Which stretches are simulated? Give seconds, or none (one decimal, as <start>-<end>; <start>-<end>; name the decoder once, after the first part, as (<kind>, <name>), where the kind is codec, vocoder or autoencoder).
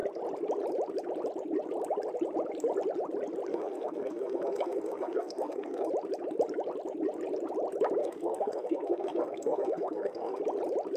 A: 3.5-5.9 (codec, SNAC); 8.0-10.4